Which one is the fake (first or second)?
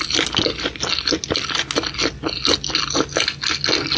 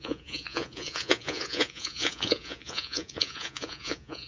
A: second